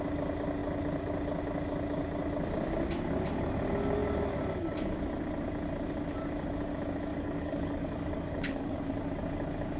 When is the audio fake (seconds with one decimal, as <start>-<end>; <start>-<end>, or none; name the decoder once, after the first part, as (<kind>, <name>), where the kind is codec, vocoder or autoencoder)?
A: 7.1-8.8 (codec, DAC)